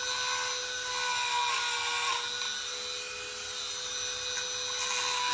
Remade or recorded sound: recorded